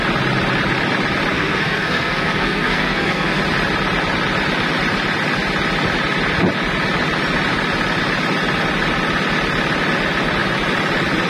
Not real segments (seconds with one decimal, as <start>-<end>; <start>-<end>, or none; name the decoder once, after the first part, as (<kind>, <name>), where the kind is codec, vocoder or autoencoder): 1.3-3.4 (codec, SNAC)